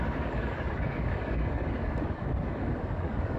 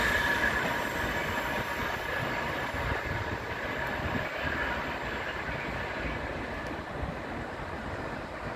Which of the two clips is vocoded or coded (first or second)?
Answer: first